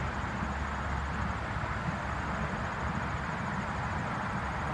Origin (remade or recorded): recorded